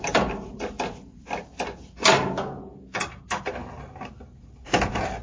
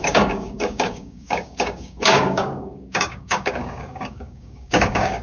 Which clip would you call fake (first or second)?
second